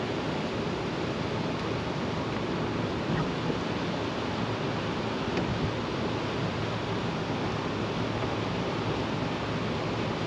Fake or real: real